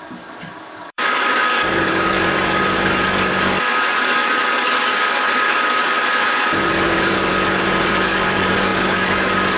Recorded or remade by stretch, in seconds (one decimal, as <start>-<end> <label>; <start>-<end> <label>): 0.0-9.6 remade